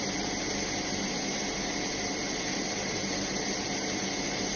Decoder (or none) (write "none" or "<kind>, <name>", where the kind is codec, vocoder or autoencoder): none